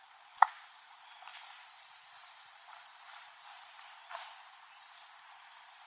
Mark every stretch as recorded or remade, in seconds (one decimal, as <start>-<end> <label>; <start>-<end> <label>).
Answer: 0.0-1.3 recorded; 1.3-2.6 remade; 2.6-5.9 recorded